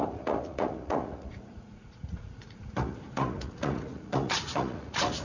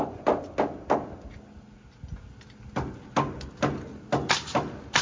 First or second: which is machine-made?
first